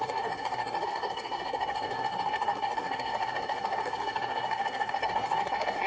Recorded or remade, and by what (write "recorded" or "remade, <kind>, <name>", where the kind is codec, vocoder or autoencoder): remade, codec, SNAC